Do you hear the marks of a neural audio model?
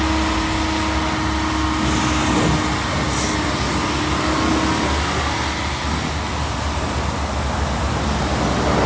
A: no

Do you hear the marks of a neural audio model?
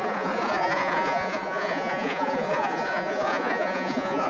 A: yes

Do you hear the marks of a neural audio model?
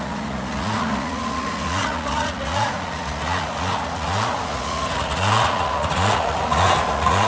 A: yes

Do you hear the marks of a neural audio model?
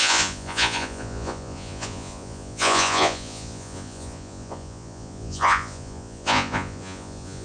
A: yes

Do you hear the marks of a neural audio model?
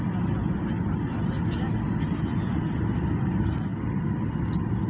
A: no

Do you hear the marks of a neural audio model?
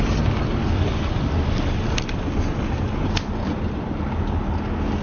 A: no